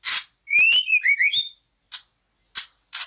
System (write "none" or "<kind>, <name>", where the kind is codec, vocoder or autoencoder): none